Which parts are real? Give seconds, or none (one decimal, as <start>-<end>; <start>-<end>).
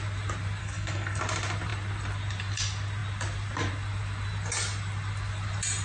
0.0-0.6; 1.2-5.8